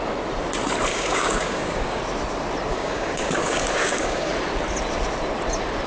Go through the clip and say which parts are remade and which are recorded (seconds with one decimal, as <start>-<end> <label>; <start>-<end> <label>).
0.0-0.9 recorded; 0.9-2.0 remade; 2.0-2.7 recorded; 2.7-4.3 remade; 4.3-5.9 recorded